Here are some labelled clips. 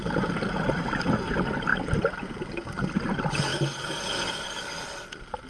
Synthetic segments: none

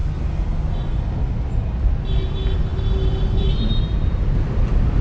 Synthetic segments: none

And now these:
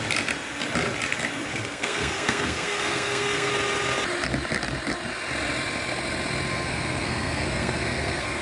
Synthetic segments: 1.5-3.5 (codec, SNAC); 6.5-8.4